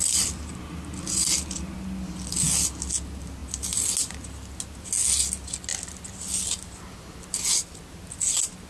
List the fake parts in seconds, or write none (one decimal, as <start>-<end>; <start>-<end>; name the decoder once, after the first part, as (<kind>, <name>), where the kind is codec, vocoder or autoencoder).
none